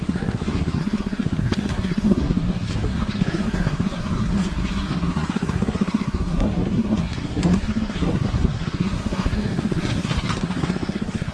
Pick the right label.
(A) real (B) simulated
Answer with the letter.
B